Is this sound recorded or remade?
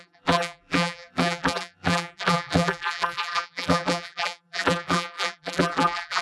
remade